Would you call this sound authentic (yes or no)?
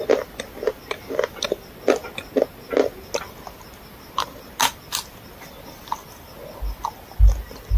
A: yes